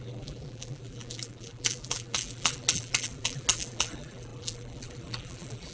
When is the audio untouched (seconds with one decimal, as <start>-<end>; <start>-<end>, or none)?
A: none

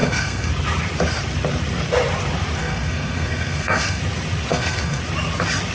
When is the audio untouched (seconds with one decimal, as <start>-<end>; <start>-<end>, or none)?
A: 0.5-2.6; 4.0-4.5; 5.0-5.7